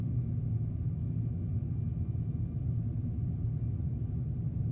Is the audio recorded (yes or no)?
yes